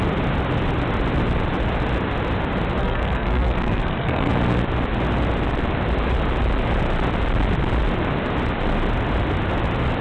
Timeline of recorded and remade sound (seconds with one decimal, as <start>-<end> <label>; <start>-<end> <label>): 0.0-2.8 recorded; 2.8-4.3 remade; 4.3-10.0 recorded